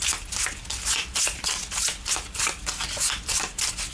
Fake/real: real